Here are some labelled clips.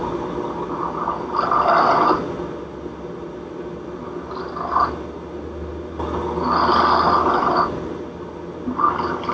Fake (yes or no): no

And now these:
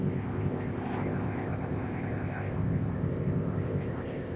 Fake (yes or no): yes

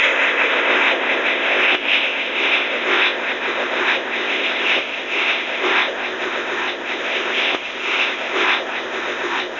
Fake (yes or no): yes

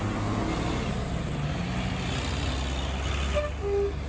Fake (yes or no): no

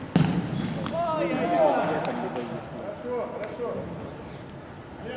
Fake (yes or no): no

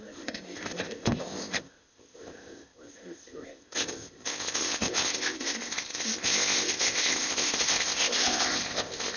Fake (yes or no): yes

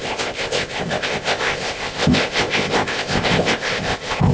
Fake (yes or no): yes